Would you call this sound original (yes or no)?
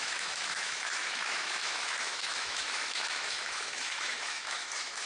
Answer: no